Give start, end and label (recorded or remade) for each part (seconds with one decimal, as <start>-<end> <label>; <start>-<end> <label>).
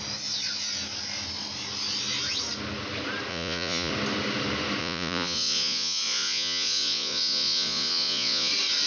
0.0-3.3 recorded; 3.3-3.9 remade; 3.9-4.8 recorded; 4.8-8.5 remade; 8.5-8.9 recorded